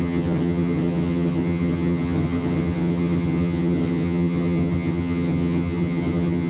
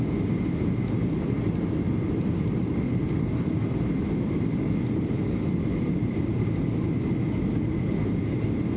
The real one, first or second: second